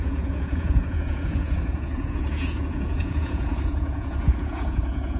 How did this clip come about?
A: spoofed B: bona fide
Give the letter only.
A